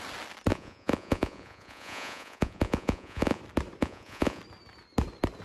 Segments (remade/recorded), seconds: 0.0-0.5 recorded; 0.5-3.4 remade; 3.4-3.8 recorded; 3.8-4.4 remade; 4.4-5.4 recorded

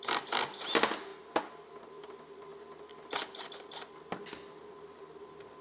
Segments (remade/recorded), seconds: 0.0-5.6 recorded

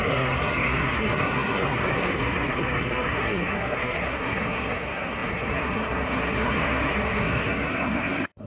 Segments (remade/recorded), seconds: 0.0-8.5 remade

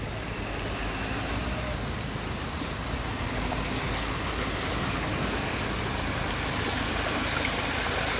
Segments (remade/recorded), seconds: 0.0-5.1 recorded; 5.1-5.8 remade; 5.8-8.2 recorded

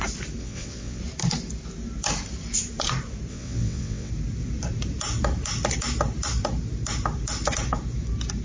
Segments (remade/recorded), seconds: 0.0-0.4 recorded; 0.4-1.0 remade; 1.0-3.3 recorded; 3.3-4.1 remade; 4.1-8.4 recorded

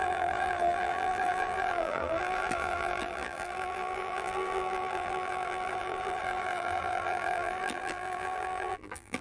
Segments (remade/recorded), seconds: 0.0-9.2 remade

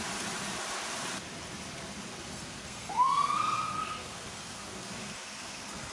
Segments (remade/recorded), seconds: 0.0-2.1 recorded; 2.1-5.9 remade

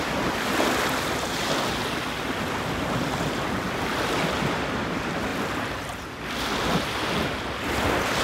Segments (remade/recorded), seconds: 0.0-8.2 recorded